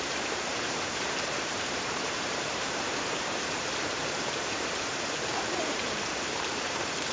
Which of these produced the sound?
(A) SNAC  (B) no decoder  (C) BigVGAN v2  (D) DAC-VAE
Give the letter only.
C